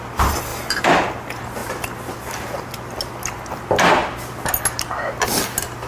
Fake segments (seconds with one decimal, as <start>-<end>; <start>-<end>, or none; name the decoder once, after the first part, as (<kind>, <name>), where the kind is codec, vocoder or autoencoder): 0.5-1.1 (vocoder, BigVGAN v2); 1.6-2.7